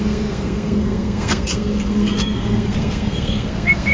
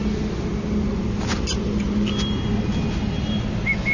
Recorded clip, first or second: second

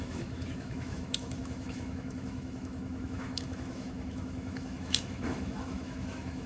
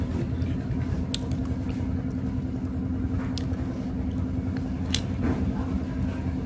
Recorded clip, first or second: second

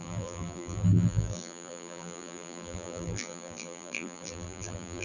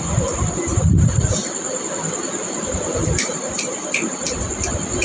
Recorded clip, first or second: second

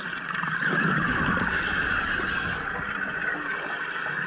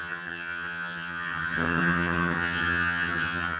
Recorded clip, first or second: first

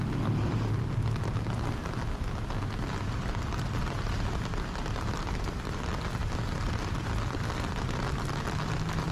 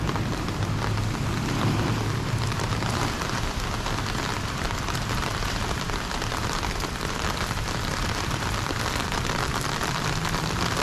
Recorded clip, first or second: first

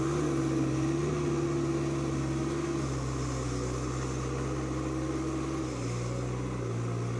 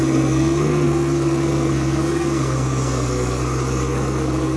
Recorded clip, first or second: first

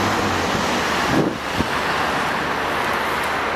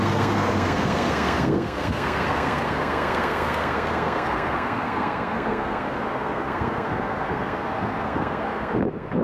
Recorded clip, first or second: first